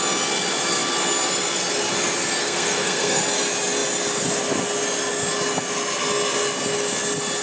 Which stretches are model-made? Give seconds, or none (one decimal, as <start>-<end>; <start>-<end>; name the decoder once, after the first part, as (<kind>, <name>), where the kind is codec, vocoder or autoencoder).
2.4-3.2 (codec, SNAC)